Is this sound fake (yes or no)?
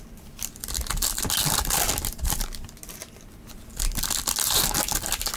no